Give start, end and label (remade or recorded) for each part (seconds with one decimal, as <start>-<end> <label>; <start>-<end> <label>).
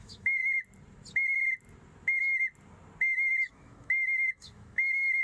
0.0-0.4 remade; 0.4-3.5 recorded; 3.5-5.2 remade